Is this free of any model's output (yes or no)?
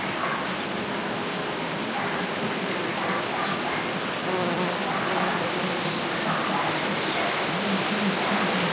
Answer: yes